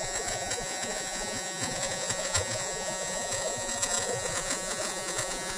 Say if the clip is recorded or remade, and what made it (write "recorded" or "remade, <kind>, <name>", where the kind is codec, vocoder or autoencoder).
remade, vocoder, Vocos